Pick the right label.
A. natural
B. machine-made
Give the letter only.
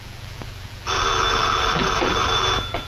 B